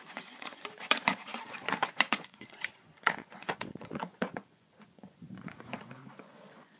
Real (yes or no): no